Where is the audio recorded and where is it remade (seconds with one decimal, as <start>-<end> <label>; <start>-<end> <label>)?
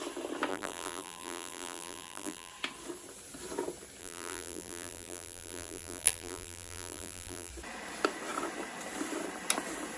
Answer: 0.0-0.5 recorded; 0.5-2.5 remade; 2.5-4.0 recorded; 4.0-7.5 remade; 7.5-10.0 recorded